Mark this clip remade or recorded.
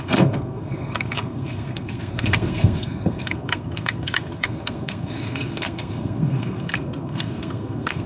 remade